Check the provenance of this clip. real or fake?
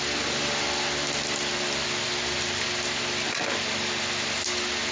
real